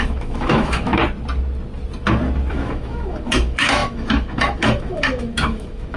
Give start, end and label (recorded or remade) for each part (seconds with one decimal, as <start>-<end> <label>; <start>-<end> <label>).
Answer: 0.0-1.0 remade; 1.0-2.5 recorded; 2.5-6.0 remade